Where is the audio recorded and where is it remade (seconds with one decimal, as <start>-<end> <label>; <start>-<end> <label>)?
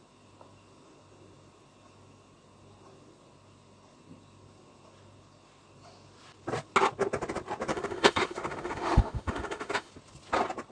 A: 0.0-7.7 recorded; 7.7-9.9 remade; 9.9-10.7 recorded